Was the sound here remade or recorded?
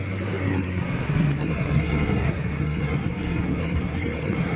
remade